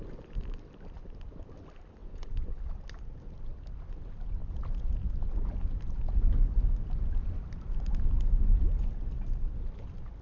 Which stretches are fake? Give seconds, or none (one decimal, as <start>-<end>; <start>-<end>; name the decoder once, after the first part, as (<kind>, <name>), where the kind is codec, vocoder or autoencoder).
2.0-2.6 (vocoder, Vocos)